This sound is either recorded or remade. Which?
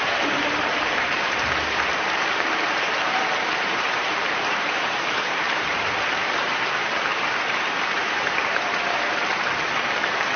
remade